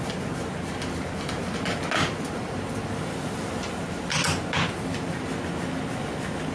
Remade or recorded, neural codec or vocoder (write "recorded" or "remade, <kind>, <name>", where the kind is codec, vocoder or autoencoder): recorded